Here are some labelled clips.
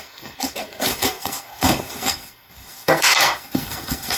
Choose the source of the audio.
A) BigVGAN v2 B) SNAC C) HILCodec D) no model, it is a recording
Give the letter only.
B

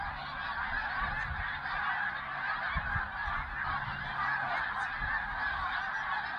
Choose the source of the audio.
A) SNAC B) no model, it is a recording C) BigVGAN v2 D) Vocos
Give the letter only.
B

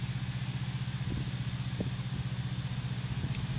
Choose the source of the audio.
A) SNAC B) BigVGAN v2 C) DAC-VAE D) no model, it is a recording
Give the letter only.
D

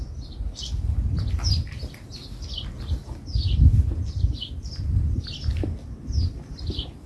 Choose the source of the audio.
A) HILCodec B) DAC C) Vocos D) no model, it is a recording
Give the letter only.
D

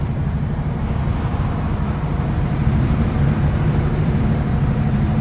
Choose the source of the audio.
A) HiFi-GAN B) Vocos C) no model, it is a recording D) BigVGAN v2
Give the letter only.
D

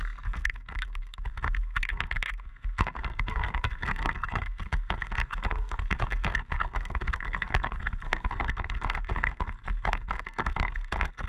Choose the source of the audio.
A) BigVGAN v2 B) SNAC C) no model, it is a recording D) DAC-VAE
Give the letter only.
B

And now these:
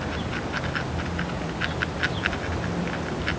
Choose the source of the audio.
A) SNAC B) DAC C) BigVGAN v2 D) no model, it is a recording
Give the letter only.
D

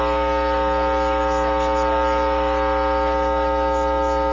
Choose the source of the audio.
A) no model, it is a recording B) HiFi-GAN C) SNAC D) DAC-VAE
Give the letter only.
A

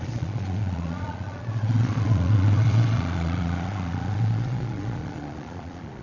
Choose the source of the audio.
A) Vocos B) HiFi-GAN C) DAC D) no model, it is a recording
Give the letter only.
A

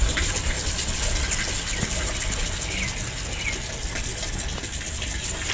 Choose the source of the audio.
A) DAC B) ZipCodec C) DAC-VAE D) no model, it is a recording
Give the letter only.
D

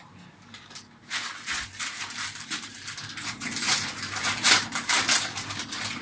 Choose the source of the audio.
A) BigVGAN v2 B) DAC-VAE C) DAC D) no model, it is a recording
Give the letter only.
A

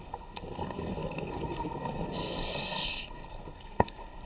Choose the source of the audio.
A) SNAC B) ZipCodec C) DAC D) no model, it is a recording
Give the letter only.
A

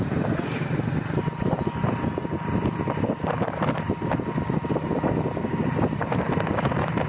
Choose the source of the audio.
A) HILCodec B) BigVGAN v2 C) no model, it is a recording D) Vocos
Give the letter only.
C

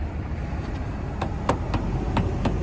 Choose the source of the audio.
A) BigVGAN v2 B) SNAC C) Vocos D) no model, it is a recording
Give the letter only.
A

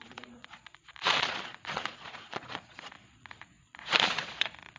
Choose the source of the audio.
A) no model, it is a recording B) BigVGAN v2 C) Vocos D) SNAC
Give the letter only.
C